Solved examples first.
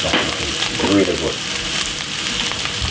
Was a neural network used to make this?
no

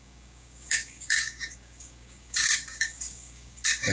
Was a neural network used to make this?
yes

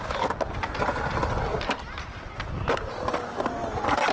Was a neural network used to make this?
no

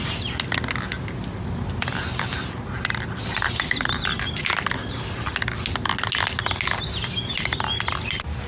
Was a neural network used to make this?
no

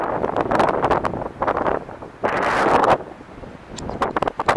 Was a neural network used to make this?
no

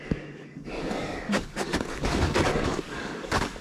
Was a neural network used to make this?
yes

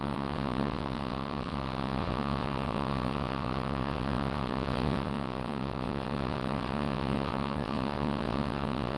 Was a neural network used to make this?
yes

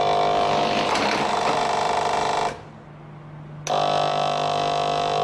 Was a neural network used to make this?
no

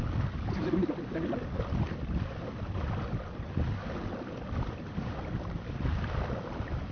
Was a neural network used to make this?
no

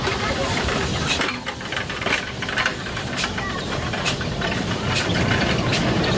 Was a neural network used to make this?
yes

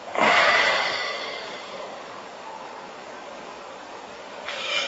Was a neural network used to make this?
yes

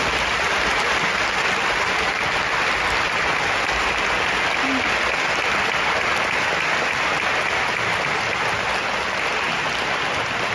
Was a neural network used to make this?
no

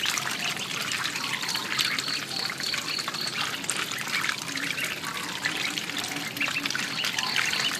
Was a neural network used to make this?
no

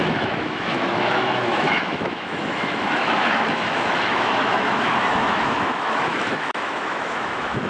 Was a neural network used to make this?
yes